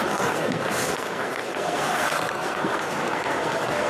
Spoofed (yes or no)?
yes